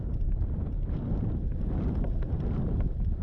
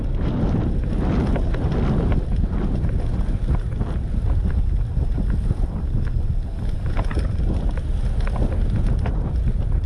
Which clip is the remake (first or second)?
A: first